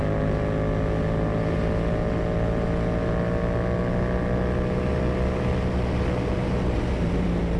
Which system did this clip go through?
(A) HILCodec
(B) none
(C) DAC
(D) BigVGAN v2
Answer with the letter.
B